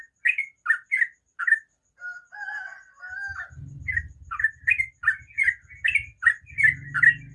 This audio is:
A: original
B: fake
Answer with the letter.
A